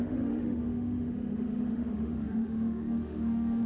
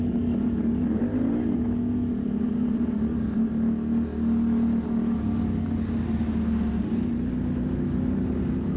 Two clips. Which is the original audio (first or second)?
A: second